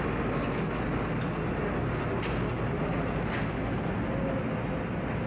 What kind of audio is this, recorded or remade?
recorded